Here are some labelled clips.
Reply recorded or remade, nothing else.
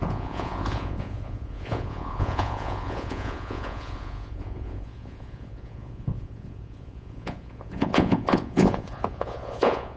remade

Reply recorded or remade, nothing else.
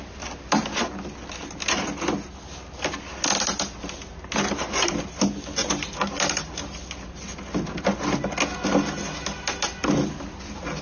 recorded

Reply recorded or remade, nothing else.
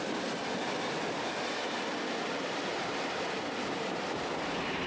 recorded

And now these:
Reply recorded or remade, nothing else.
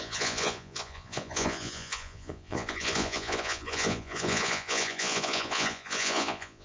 remade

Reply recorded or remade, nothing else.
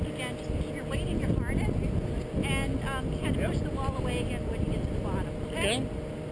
recorded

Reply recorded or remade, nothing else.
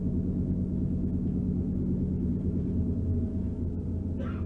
recorded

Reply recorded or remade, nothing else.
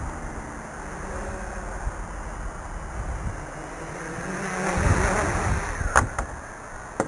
recorded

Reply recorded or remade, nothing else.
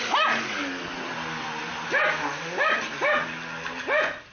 recorded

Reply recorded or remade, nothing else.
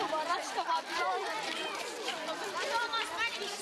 recorded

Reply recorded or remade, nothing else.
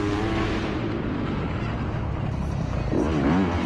recorded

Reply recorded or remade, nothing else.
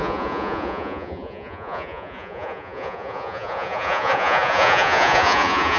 remade